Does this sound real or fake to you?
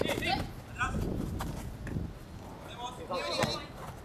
real